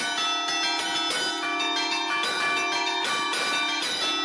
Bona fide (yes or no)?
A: yes